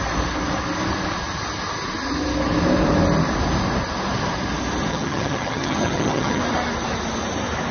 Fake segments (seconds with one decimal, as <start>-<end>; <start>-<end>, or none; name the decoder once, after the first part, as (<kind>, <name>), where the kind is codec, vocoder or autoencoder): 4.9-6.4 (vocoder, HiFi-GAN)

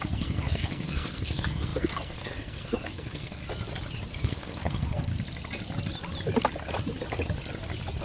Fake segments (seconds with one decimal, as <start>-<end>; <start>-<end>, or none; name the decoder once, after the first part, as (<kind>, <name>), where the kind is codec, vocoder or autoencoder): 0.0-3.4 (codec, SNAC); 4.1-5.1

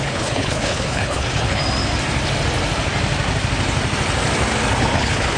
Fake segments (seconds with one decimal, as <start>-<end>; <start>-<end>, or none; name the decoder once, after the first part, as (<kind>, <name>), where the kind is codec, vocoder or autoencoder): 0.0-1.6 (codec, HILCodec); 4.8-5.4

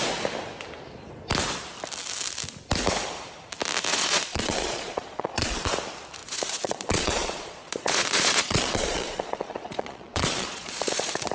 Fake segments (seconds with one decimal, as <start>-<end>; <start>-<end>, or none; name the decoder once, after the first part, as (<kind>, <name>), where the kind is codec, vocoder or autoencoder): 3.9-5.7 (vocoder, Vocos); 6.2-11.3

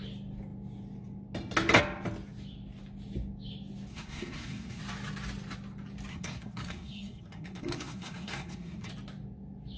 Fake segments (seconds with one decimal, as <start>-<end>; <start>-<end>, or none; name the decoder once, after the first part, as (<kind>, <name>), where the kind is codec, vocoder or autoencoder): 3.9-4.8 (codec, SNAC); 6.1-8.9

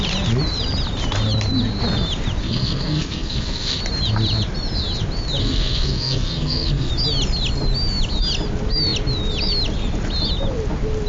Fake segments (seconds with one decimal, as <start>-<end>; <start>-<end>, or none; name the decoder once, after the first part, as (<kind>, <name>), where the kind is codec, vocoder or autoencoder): 2.4-3.8 (codec, SNAC); 5.4-6.9

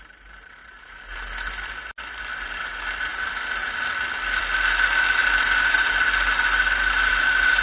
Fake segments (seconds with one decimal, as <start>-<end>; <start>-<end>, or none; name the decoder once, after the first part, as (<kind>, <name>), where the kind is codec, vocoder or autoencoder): none

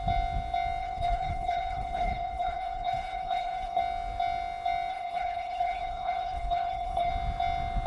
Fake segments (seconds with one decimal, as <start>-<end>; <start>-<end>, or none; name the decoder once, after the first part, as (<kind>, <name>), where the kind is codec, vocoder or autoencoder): 0.8-3.8 (codec, HILCodec); 4.9-7.1